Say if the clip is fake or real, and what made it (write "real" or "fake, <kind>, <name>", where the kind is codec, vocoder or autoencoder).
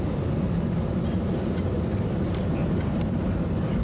fake, vocoder, BigVGAN v2